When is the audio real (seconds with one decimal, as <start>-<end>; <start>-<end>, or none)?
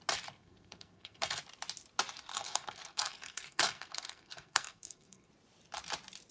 0.0-0.4; 1.4-2.3; 5.3-6.3